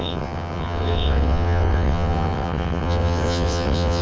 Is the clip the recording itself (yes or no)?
no